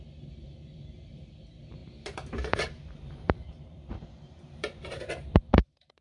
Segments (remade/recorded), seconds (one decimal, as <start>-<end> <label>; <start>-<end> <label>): 0.0-6.0 remade